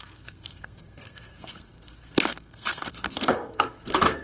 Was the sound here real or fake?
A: fake